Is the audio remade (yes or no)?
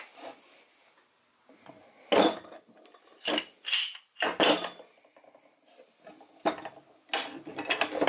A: no